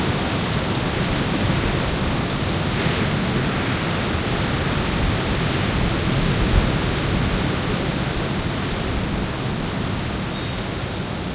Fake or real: real